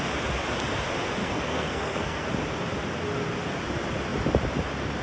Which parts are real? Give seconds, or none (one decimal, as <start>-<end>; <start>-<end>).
0.0-1.2; 2.3-5.0